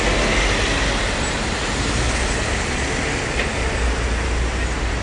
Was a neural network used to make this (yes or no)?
no